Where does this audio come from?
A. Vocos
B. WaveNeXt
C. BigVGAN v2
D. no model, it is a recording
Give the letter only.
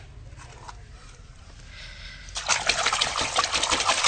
D